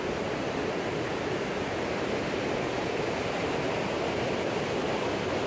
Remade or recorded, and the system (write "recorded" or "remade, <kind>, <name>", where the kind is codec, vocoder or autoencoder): recorded